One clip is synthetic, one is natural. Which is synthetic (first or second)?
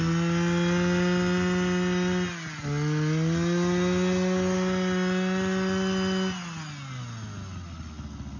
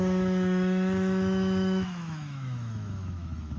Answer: second